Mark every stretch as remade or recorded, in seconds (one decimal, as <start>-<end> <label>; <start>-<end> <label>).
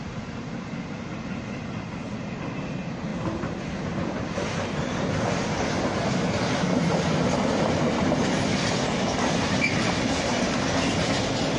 0.0-11.6 recorded